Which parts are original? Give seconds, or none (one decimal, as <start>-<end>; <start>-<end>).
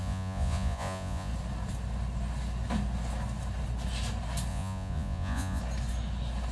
1.3-4.5; 5.6-6.5